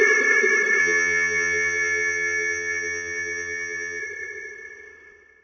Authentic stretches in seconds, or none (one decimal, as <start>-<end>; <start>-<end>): 0.0-0.8; 4.0-5.4